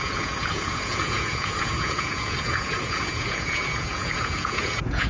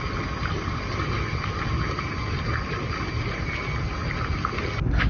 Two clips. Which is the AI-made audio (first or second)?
first